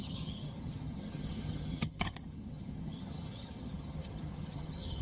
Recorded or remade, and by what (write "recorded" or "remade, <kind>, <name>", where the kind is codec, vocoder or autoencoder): remade, vocoder, HiFi-GAN